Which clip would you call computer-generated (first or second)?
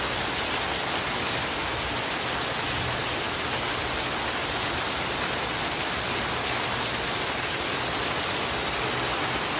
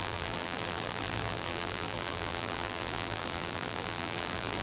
second